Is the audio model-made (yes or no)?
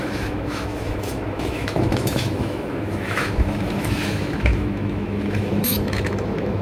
yes